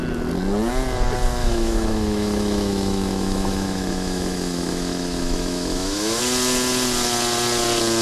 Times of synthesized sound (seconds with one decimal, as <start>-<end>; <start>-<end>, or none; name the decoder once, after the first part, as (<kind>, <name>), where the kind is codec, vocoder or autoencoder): 1.4-6.2 (autoencoder, DAC-VAE)